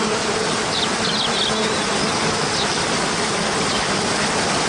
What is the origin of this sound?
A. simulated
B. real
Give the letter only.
B